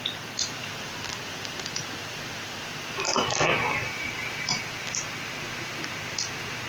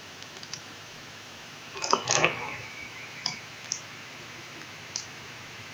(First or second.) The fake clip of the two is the second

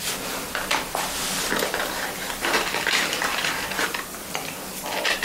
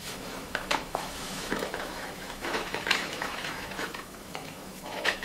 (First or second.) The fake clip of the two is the second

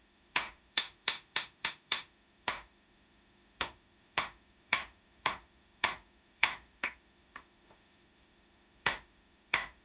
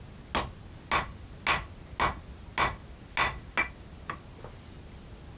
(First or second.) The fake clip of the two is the first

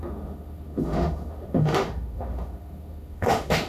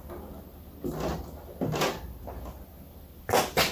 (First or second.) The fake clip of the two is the first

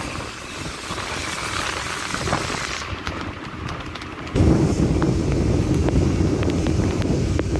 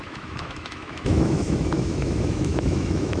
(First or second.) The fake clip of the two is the second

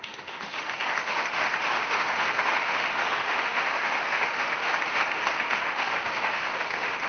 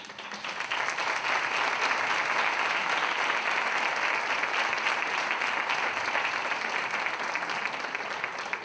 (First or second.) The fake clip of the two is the first